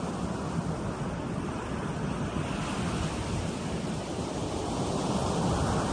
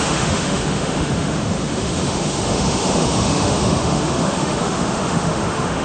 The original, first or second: first